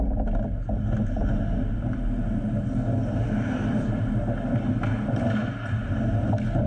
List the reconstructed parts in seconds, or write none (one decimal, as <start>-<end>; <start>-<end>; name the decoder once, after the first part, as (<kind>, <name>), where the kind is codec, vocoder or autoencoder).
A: none